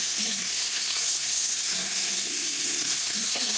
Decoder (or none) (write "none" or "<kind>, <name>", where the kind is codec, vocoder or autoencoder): codec, SNAC